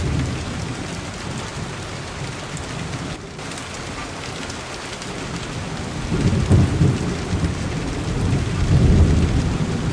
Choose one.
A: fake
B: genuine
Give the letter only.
B